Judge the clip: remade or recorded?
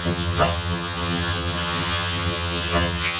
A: remade